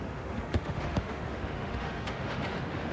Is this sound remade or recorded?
remade